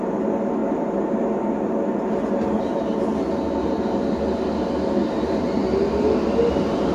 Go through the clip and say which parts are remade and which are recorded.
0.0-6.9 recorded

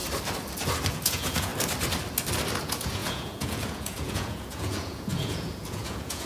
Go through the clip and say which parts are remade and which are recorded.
0.0-0.9 recorded; 0.9-1.5 remade; 1.5-2.6 recorded; 2.6-6.3 remade

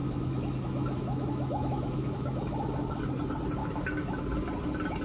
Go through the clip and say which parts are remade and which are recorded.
0.0-3.0 remade; 3.0-3.6 recorded; 3.6-4.2 remade; 4.2-5.0 recorded

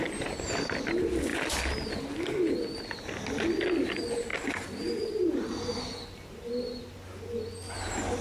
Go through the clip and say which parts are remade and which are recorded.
0.0-8.2 recorded

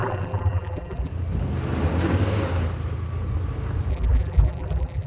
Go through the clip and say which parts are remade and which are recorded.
0.0-1.1 remade; 1.1-3.9 recorded; 3.9-5.1 remade

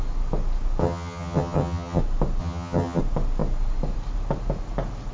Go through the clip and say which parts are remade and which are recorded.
0.0-0.8 recorded; 0.8-2.0 remade; 2.0-2.4 recorded; 2.4-3.0 remade; 3.0-5.1 recorded